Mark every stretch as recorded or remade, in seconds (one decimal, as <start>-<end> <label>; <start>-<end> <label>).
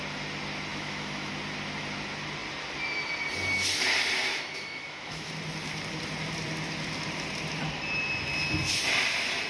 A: 0.0-0.7 recorded; 0.7-1.3 remade; 1.3-4.3 recorded; 4.3-5.3 remade; 5.3-9.5 recorded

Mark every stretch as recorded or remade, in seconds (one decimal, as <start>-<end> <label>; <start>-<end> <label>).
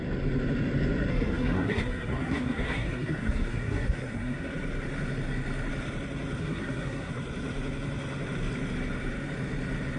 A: 0.0-1.1 recorded; 1.1-4.5 remade; 4.5-6.4 recorded; 6.4-7.1 remade; 7.1-10.0 recorded